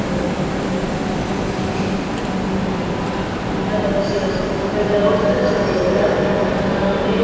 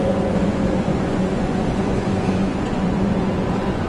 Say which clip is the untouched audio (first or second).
first